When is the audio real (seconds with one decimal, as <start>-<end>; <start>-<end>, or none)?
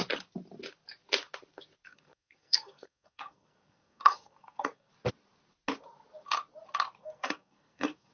0.0-1.9; 4.9-7.0